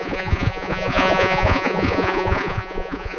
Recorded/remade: remade